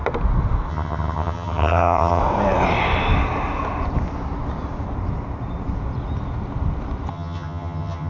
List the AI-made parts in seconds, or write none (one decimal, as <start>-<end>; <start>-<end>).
0.7-2.2; 7.1-8.1